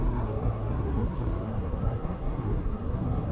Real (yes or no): no